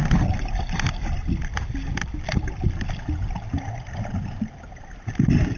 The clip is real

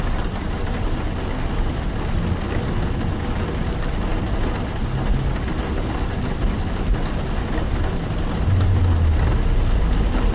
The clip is real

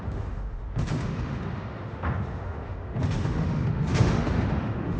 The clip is fake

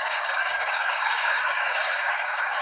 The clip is fake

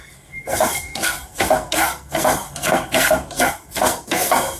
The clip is fake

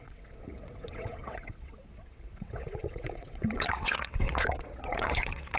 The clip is fake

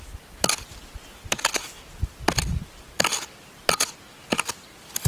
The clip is real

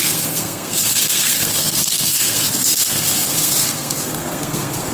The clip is fake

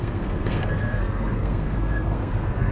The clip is fake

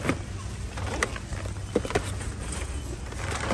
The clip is real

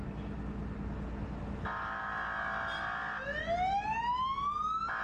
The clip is real